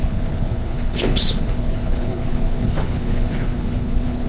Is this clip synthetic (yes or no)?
yes